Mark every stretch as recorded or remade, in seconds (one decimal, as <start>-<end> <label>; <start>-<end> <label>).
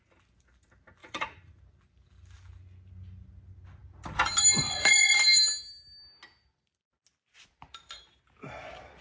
0.0-1.0 recorded; 1.0-1.6 remade; 1.6-9.0 recorded